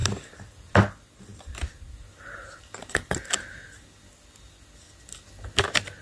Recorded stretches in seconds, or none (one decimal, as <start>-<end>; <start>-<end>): 0.0-6.0